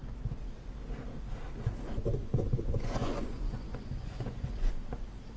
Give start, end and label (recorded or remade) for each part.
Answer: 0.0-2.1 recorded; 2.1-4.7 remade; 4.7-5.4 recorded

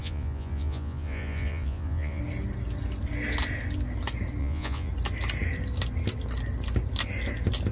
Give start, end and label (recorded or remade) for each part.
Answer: 0.0-2.2 remade; 2.2-4.4 recorded; 4.4-4.9 remade; 4.9-7.7 recorded

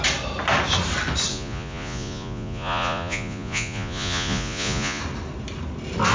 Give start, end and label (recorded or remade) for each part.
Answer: 0.0-1.3 recorded; 1.3-5.0 remade; 5.0-6.1 recorded